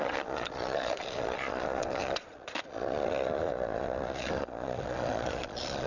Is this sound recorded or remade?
remade